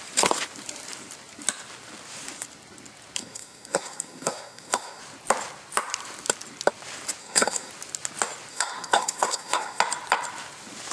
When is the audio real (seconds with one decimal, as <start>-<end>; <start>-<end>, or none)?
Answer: 0.0-3.2; 5.0-7.2; 7.7-8.5; 9.8-10.9